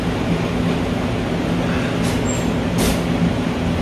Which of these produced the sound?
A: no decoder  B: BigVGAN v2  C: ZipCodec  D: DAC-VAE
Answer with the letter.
A